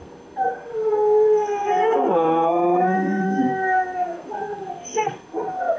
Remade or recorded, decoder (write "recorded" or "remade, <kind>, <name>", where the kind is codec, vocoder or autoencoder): remade, codec, SNAC